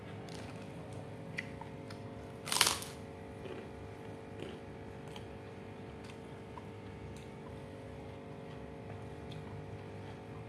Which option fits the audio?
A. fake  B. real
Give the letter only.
B